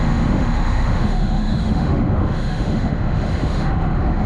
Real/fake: fake